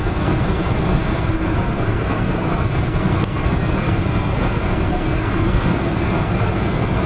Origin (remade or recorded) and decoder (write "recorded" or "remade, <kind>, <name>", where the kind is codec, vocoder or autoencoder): remade, codec, SNAC